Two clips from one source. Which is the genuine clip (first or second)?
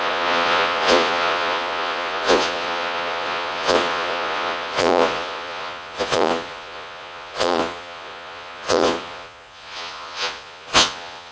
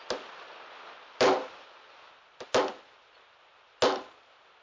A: second